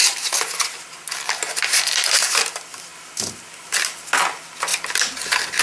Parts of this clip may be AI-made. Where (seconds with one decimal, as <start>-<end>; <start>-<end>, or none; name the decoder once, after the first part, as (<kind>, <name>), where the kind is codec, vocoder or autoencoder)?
none